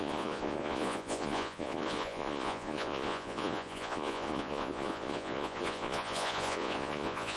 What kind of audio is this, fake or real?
fake